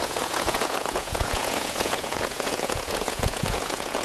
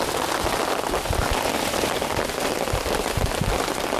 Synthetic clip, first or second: first